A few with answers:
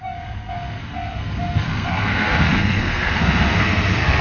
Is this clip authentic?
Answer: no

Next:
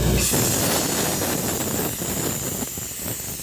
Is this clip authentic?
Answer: yes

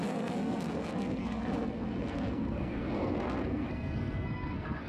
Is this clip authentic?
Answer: no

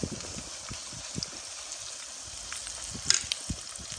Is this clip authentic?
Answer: yes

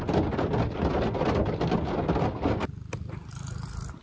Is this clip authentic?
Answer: yes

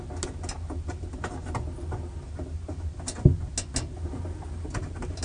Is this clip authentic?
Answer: yes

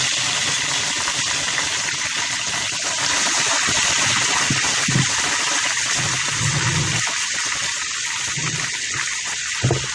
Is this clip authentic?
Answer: yes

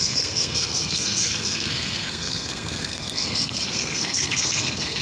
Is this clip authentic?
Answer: no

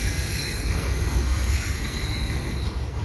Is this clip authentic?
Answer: no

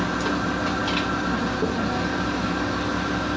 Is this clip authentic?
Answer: yes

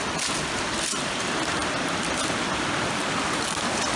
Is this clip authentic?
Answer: yes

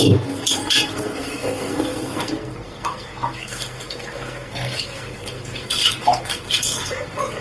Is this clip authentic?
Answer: no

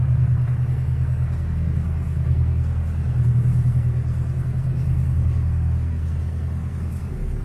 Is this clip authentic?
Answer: no